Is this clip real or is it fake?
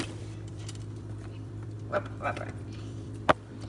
fake